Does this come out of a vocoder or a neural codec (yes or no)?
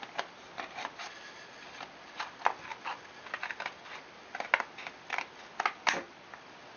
no